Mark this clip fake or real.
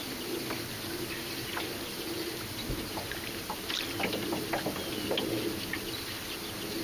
real